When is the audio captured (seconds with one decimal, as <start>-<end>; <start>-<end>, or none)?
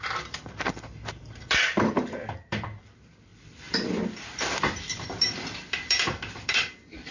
none